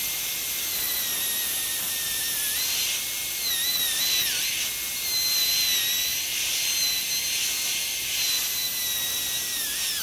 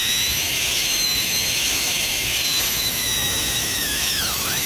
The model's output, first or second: second